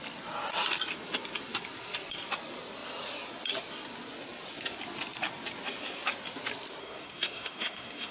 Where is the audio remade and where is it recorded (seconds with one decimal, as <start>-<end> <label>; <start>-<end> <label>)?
0.0-6.8 recorded; 6.8-8.1 remade